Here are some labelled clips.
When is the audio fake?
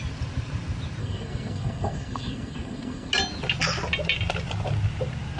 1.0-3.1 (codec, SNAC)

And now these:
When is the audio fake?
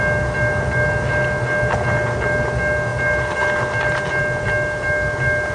none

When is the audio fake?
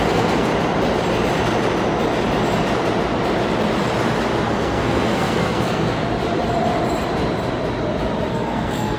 0.0-0.5 (codec, SNAC); 4.5-6.0; 8.3-9.0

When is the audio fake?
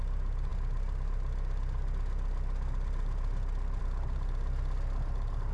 none